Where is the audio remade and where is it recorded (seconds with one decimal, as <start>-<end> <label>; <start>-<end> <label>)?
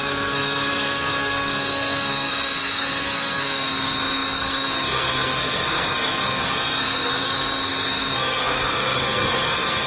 0.0-9.9 remade